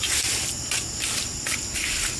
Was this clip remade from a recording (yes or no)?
no